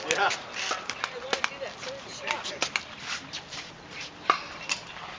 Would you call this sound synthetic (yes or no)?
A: no